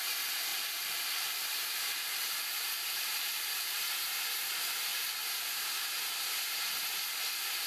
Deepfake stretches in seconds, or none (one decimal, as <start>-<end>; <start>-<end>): 0.5-3.9; 4.9-5.7